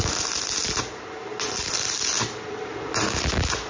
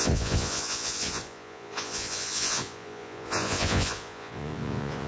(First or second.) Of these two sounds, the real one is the first